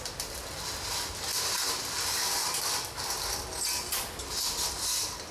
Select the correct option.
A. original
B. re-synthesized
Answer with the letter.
A